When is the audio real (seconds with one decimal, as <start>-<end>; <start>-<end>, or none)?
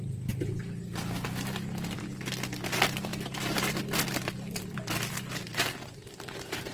0.0-3.1; 3.8-6.0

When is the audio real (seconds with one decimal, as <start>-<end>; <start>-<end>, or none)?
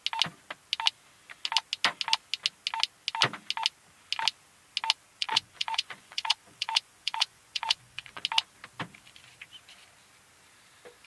0.0-5.2; 8.2-11.1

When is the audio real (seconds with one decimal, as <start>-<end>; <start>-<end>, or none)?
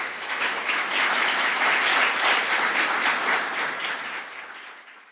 1.9-5.1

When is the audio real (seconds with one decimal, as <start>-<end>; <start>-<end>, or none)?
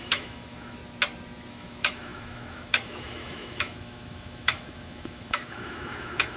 0.8-1.5